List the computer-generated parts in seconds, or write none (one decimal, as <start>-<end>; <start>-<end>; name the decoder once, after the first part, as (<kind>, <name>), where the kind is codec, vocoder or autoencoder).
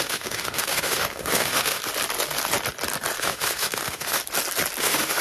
0.0-1.8 (autoencoder, DAC-VAE); 3.2-4.2; 4.8-5.2